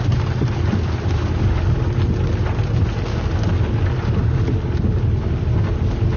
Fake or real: real